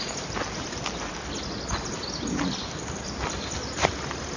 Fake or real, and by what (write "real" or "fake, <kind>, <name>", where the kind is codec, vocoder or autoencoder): real